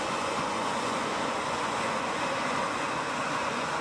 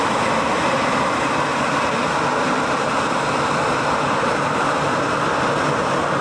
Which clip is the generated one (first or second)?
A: first